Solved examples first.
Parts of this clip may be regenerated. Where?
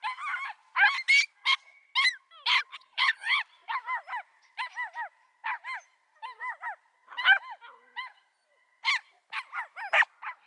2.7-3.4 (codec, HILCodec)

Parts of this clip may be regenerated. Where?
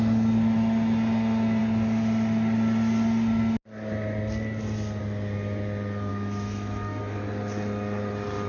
6.1-7.0 (autoencoder, DAC-VAE)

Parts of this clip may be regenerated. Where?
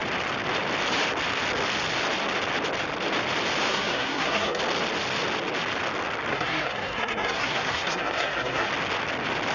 3.7-4.6 (codec, SNAC); 6.3-8.7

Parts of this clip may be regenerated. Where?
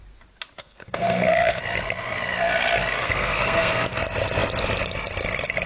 0.6-1.6 (codec, SNAC); 3.0-3.7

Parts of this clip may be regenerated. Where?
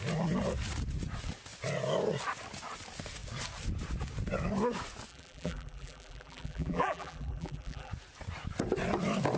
5.1-7.9 (vocoder, BigVGAN v2)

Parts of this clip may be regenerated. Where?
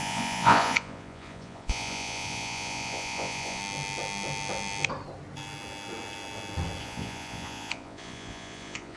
0.0-3.6 (vocoder, Vocos); 6.8-9.0